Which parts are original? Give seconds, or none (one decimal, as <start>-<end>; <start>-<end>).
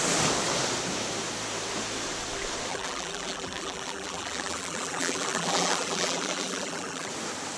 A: 0.0-2.7; 7.1-7.6